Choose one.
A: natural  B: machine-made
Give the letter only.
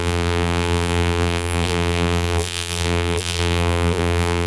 B